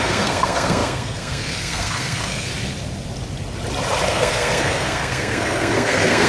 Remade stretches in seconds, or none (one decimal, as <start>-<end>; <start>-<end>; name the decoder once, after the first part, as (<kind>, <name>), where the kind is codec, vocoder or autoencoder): 0.0-2.5 (codec, SNAC); 4.1-6.3